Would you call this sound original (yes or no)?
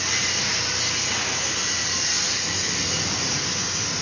yes